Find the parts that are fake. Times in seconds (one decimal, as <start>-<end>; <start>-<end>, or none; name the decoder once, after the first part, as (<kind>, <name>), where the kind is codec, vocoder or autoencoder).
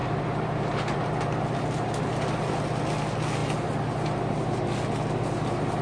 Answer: 0.0-2.6 (vocoder, BigVGAN v2)